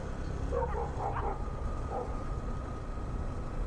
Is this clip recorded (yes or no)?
yes